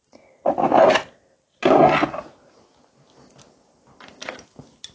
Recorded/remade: recorded